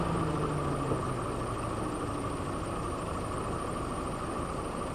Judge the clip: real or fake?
real